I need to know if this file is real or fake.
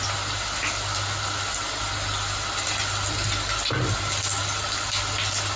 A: real